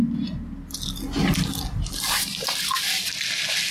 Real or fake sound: real